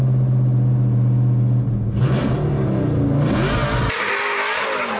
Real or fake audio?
real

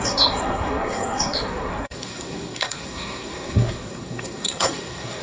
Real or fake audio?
fake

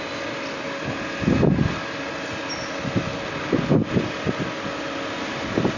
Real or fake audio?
real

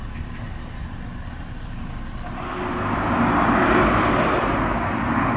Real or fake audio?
real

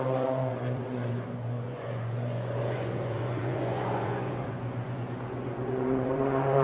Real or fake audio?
fake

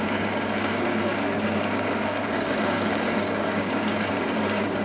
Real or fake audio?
fake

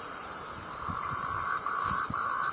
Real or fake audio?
fake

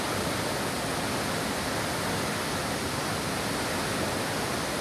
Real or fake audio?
real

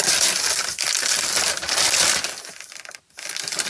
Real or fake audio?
real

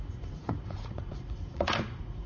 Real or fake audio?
fake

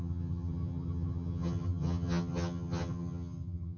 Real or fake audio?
fake